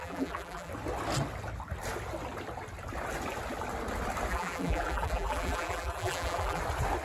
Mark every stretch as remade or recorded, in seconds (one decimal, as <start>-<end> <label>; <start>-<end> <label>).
0.0-0.7 remade; 0.7-4.3 recorded; 4.3-6.6 remade; 6.6-7.0 recorded